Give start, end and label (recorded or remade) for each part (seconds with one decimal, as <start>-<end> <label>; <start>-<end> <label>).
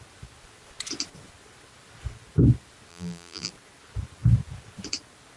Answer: 0.0-2.9 recorded; 2.9-3.5 remade; 3.5-5.4 recorded